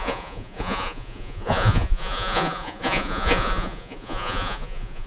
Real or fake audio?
fake